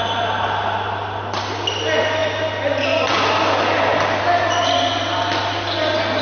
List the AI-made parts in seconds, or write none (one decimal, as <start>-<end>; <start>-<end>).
none